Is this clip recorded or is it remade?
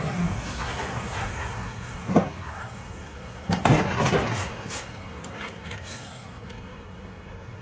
remade